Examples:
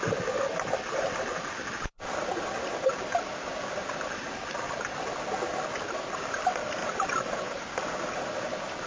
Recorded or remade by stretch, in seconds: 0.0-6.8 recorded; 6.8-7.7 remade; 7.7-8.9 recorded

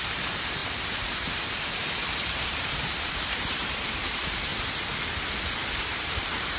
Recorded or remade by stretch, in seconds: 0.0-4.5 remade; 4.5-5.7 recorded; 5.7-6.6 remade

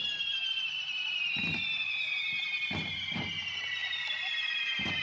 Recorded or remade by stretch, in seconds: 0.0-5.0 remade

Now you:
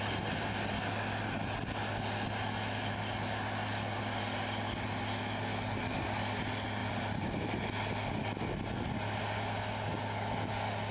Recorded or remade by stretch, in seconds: 0.0-6.8 recorded; 6.8-7.3 remade; 7.3-10.9 recorded

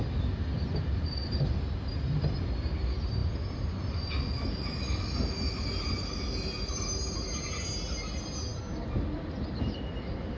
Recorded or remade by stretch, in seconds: 0.0-10.4 recorded

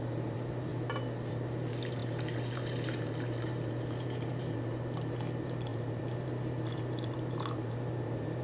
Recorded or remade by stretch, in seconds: 0.0-0.7 remade; 0.7-1.3 recorded; 1.3-8.4 remade